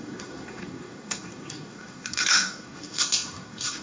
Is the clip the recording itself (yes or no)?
no